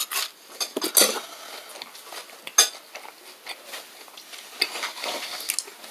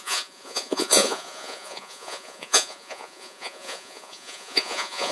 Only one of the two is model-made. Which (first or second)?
second